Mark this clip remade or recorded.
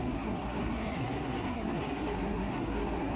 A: remade